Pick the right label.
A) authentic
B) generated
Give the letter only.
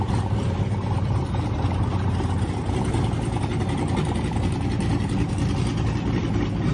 B